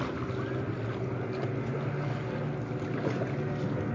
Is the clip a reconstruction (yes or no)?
no